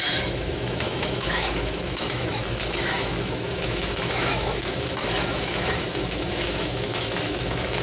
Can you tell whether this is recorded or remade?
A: remade